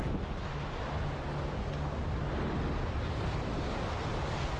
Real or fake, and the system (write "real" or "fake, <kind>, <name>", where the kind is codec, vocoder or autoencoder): real